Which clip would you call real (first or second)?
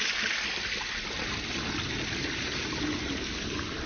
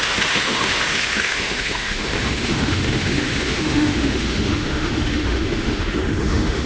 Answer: first